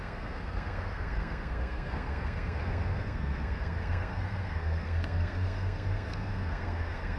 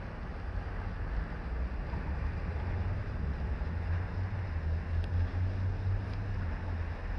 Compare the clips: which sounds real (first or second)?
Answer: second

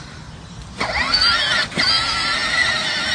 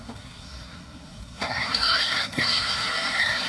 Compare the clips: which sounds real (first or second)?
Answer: first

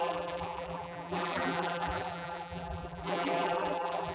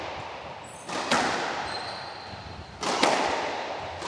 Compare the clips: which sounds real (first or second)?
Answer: second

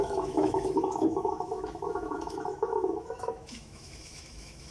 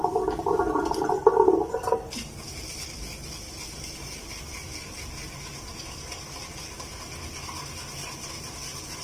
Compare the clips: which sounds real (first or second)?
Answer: second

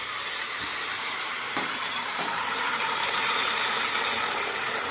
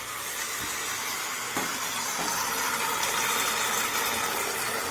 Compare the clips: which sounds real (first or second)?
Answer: second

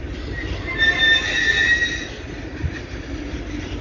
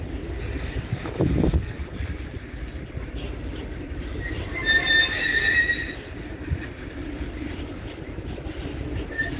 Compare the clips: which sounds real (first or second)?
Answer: first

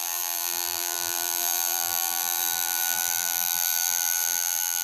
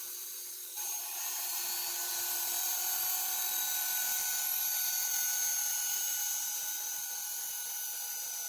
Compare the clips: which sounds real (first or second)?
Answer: second